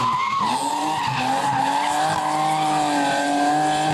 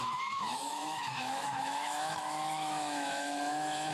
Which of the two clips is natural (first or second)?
first